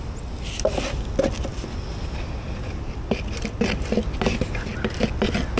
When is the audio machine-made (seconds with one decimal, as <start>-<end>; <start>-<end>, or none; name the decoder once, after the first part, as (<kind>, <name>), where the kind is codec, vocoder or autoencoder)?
none